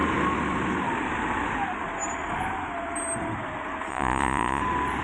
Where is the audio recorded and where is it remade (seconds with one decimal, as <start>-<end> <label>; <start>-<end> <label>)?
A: 0.0-3.9 recorded; 3.9-4.6 remade; 4.6-5.0 recorded

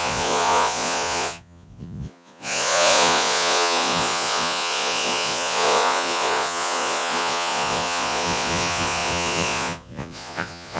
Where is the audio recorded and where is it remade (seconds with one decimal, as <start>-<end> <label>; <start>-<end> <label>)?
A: 0.0-10.8 remade